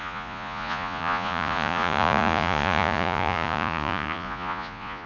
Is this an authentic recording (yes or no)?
no